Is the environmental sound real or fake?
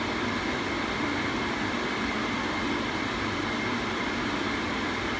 fake